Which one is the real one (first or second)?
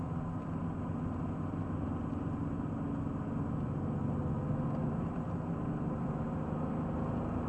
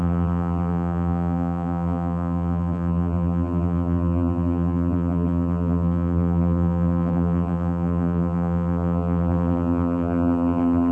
first